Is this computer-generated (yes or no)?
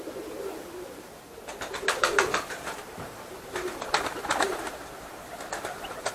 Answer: yes